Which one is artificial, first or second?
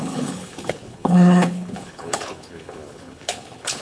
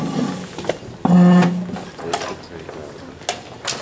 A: first